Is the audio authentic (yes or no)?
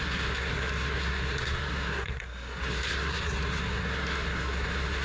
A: no